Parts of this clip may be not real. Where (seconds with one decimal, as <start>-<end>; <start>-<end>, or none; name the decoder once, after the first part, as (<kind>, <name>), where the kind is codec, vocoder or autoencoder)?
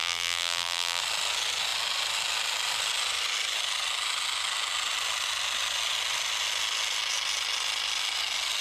0.0-1.0 (vocoder, BigVGAN v2)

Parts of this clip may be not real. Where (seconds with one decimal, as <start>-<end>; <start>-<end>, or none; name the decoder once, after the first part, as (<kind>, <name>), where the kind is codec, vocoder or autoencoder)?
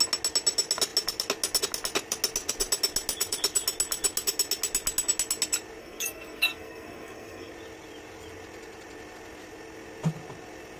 5.8-7.5 (codec, SNAC)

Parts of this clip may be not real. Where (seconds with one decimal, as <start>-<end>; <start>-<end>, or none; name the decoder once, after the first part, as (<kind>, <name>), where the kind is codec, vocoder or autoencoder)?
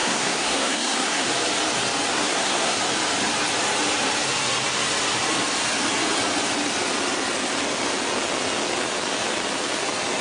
0.0-1.3 (codec, SNAC); 2.1-2.8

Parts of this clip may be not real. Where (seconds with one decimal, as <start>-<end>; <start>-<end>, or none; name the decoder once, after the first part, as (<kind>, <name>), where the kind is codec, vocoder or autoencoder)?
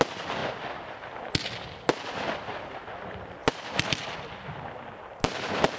none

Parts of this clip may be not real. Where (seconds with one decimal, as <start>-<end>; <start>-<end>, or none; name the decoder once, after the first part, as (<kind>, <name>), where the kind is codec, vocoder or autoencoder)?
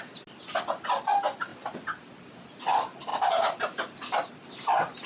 1.5-2.1 (vocoder, BigVGAN v2)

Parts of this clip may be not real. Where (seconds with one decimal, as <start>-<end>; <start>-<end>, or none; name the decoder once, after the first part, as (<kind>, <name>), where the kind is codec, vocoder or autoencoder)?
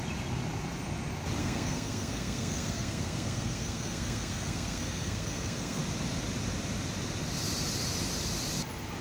1.4-5.8 (codec, SNAC)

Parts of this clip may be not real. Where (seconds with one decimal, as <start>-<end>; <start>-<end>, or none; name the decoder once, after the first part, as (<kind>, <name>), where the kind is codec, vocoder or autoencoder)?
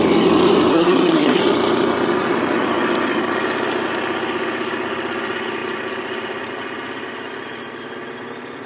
0.7-1.4 (codec, SNAC)